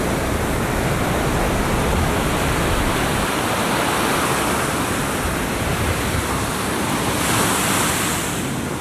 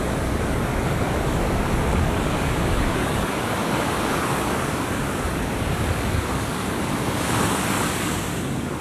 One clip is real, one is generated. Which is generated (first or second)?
second